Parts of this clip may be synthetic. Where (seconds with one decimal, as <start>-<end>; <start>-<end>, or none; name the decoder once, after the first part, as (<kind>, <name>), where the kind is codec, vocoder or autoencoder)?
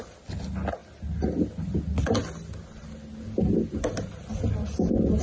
none